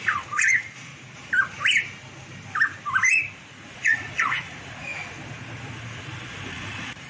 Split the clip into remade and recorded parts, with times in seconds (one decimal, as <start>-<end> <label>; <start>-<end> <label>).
0.0-0.9 remade; 0.9-3.7 recorded; 3.7-4.9 remade; 4.9-6.5 recorded; 6.5-7.1 remade